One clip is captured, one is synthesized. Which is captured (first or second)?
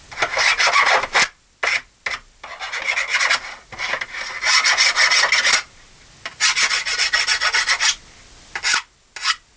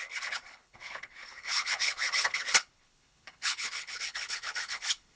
first